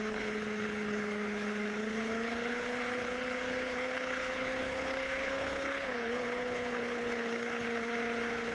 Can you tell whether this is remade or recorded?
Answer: remade